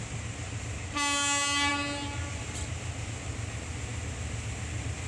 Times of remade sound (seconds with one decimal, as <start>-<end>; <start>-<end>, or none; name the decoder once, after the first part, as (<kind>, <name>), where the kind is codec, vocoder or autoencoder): none